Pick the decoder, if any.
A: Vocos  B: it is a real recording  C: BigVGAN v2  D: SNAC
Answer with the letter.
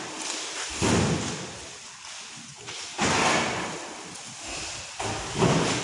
B